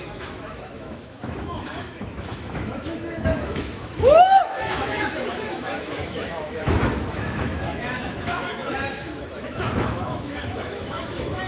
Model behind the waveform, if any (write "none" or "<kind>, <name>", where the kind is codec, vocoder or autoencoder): autoencoder, DAC-VAE